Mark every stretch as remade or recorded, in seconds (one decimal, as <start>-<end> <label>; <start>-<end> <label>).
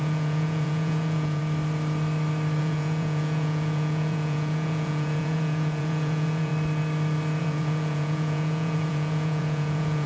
0.0-1.4 remade; 1.4-2.6 recorded; 2.6-6.5 remade; 6.5-7.4 recorded; 7.4-10.1 remade